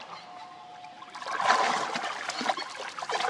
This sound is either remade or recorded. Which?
recorded